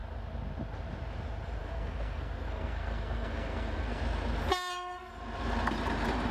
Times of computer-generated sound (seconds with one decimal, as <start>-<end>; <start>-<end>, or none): 1.6-4.0; 4.5-5.1